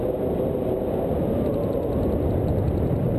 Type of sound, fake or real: real